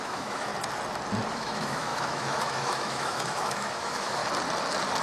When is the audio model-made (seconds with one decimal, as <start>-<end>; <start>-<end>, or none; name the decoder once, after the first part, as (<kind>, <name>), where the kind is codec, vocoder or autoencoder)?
0.0-0.5 (autoencoder, DAC-VAE); 1.3-4.2